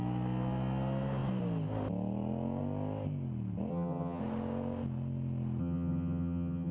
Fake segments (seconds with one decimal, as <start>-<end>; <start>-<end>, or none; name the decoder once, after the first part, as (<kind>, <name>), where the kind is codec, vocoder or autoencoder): 3.7-4.2 (vocoder, HiFi-GAN); 5.6-6.7